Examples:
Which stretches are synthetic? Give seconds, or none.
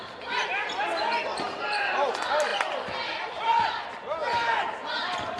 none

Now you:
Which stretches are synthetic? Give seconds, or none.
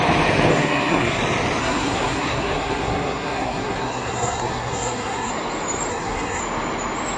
0.5-1.2 (codec, SNAC); 1.6-5.3; 5.9-6.4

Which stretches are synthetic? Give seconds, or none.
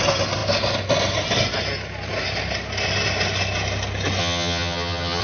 4.2-5.2 (vocoder, HiFi-GAN)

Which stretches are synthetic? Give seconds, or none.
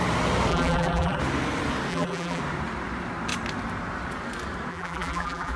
0.5-1.2 (vocoder, BigVGAN v2); 1.9-2.4; 4.7-5.6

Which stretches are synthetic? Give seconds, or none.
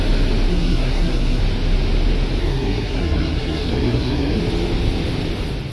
0.5-1.4 (codec, SNAC); 2.4-4.4